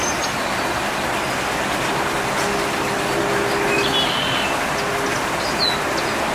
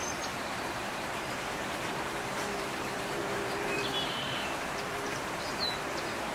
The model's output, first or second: second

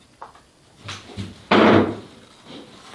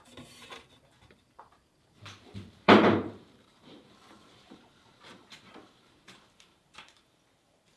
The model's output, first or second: second